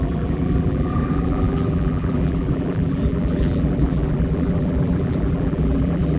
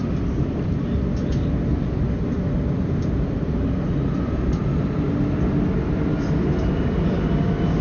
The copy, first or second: first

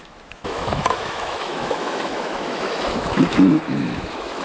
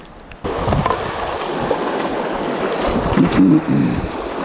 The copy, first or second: first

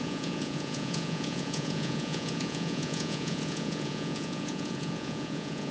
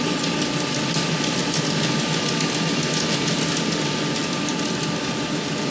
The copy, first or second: first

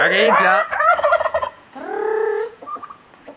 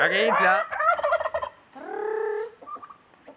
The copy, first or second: first